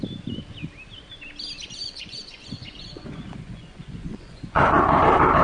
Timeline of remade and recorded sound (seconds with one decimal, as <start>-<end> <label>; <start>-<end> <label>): 0.0-1.8 recorded; 1.8-5.0 remade; 5.0-5.4 recorded